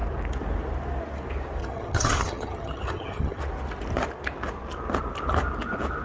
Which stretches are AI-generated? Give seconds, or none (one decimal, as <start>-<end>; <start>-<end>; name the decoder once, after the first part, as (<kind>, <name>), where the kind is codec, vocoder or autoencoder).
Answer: 1.6-3.4 (vocoder, HiFi-GAN)